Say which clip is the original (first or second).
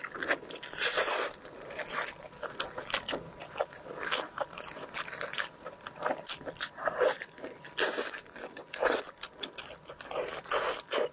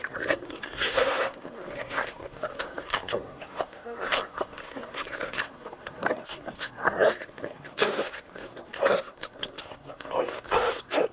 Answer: first